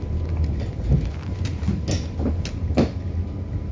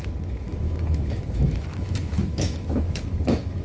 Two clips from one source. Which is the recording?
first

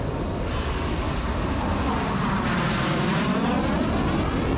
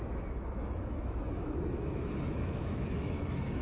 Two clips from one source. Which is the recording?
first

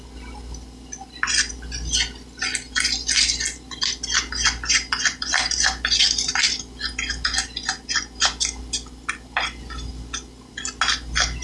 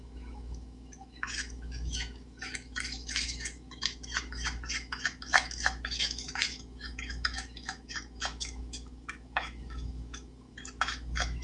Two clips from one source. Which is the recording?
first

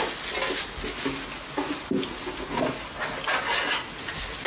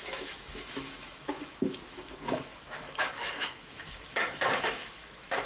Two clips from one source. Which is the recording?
first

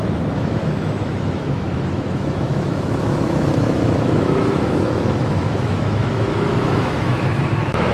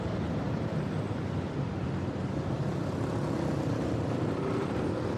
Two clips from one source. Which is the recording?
second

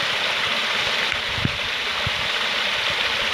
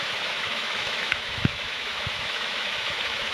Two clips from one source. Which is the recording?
first